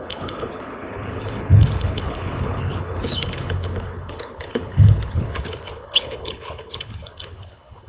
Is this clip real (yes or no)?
no